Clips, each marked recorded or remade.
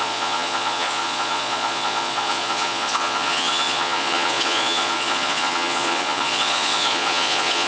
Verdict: remade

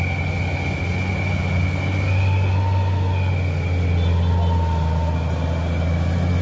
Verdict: recorded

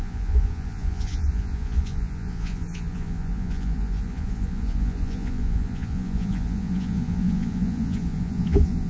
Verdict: remade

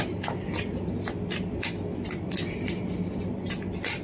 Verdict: recorded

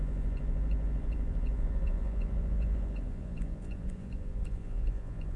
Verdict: remade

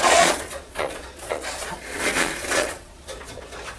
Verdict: remade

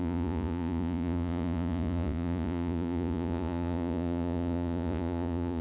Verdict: remade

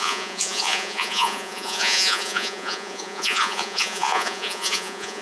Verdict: remade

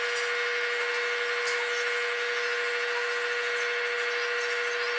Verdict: recorded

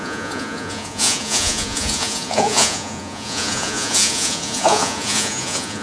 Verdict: remade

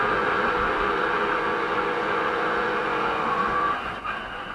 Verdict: remade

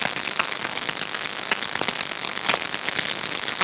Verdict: recorded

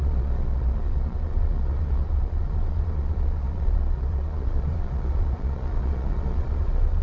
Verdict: remade